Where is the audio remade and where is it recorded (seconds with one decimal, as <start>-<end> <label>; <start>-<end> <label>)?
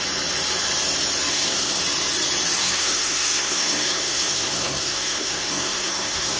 0.0-1.3 recorded; 1.3-1.8 remade; 1.8-2.6 recorded; 2.6-6.4 remade